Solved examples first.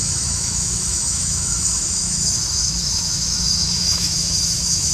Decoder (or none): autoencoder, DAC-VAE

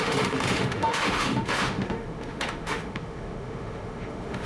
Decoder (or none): autoencoder, DAC-VAE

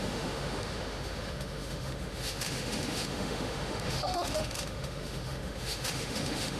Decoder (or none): autoencoder, DAC-VAE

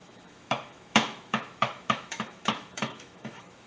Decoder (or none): autoencoder, DAC-VAE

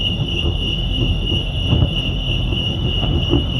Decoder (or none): autoencoder, DAC-VAE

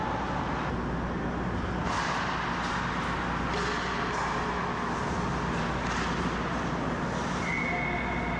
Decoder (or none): none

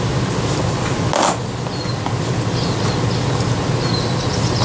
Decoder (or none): none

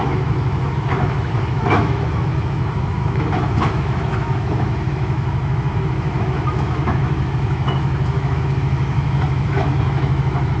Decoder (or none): autoencoder, DAC-VAE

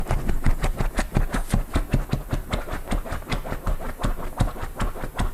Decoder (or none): none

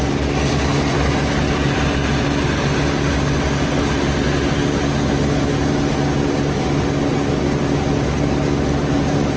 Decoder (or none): none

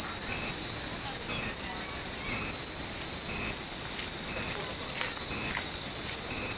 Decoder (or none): none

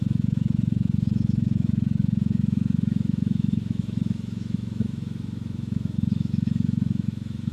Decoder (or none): autoencoder, DAC-VAE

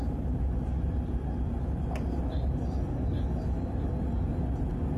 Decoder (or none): none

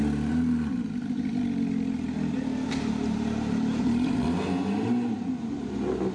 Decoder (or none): none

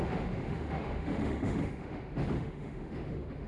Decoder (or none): autoencoder, DAC-VAE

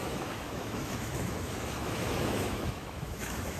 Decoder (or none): autoencoder, DAC-VAE